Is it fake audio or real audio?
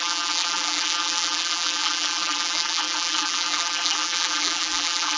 fake